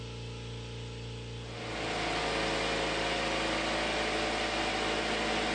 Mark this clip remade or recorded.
recorded